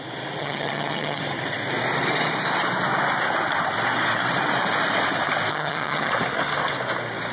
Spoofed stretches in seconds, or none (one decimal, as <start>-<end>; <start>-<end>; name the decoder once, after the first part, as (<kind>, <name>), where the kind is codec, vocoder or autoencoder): 0.4-1.2 (vocoder, HiFi-GAN); 5.5-6.1